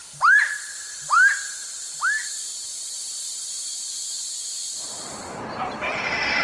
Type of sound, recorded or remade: remade